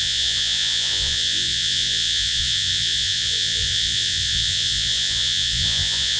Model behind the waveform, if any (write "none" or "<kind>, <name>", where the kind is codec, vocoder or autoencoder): vocoder, Vocos